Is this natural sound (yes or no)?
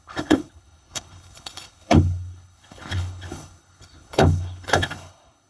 no